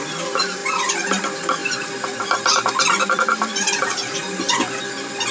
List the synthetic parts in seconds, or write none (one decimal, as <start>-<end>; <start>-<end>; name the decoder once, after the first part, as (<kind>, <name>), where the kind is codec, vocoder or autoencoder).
0.6-1.2 (vocoder, BigVGAN v2); 1.6-4.8